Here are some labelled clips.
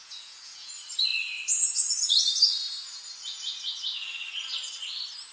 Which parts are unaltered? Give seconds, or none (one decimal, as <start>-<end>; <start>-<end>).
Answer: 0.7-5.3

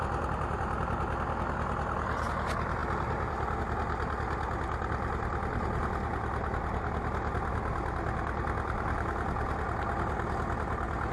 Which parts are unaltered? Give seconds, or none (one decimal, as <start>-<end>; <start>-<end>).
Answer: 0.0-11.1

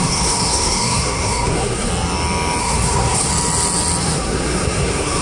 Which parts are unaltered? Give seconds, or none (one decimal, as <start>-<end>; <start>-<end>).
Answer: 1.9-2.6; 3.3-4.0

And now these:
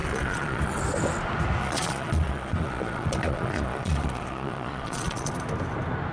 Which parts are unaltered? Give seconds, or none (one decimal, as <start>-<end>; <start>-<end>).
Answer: 0.8-1.6; 5.3-6.1

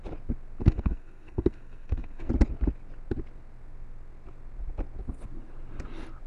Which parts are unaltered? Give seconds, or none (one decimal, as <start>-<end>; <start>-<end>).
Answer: 0.0-0.6; 2.3-6.3

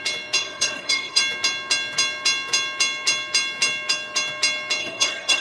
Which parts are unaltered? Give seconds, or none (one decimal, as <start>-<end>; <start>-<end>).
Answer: 0.0-0.4; 1.2-4.8

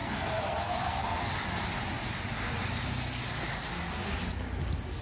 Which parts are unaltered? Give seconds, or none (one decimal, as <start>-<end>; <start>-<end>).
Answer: 1.3-5.0